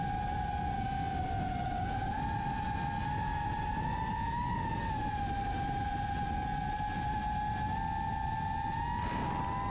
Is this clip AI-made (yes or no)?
no